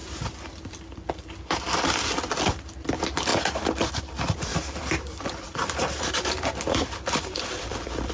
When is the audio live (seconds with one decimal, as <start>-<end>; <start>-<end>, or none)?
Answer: none